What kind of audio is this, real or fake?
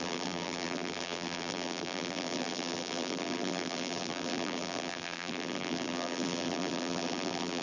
fake